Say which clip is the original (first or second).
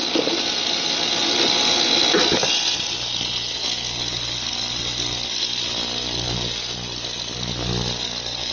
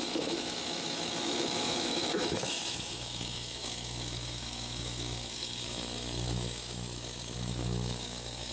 first